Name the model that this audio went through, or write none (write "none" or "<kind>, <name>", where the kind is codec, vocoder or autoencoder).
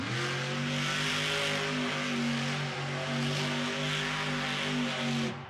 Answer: none